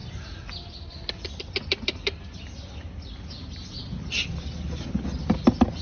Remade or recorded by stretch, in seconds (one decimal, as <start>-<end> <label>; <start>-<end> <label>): 0.0-5.8 recorded